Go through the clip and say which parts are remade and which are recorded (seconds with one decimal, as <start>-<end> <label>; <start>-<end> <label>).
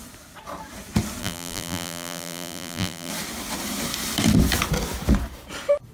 0.0-1.2 recorded; 1.2-3.1 remade; 3.1-5.9 recorded